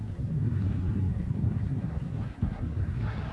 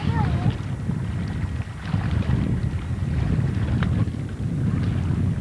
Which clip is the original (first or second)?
second